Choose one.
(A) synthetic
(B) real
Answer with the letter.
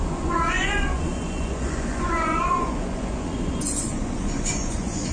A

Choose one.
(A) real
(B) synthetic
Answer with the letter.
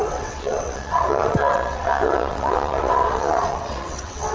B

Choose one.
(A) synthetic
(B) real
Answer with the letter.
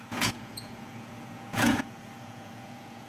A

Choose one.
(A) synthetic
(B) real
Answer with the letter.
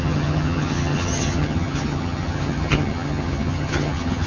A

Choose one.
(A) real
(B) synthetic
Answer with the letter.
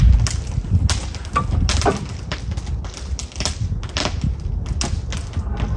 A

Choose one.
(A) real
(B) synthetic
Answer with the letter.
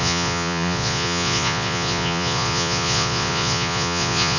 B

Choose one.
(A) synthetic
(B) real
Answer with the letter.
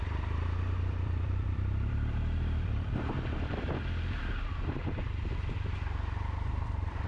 A